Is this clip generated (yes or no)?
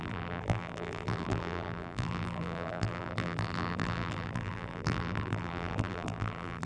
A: yes